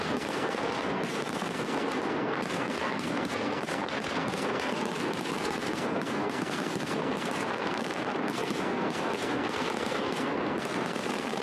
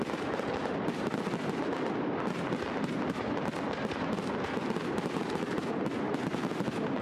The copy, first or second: first